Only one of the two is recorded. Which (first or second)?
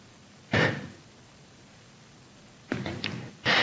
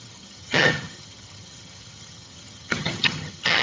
first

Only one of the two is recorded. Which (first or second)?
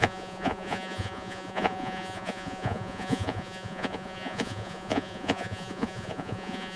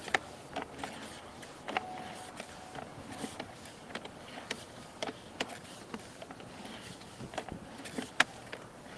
second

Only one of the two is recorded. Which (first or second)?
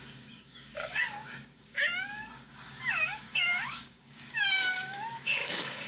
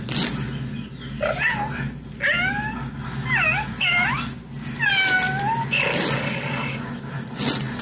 second